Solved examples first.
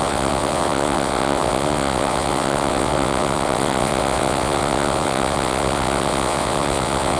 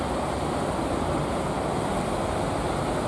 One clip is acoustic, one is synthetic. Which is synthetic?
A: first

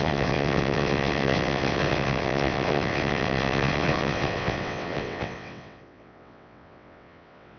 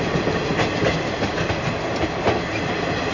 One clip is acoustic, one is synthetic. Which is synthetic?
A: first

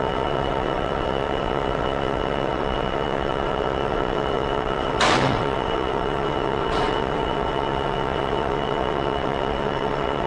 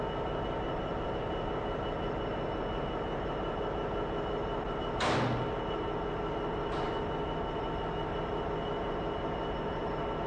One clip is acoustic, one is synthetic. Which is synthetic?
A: first